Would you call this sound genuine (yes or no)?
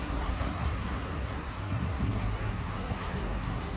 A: no